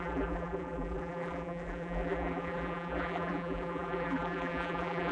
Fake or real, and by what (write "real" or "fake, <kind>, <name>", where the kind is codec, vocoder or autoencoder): fake, vocoder, BigVGAN v2